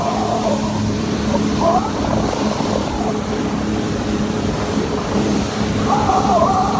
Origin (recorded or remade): remade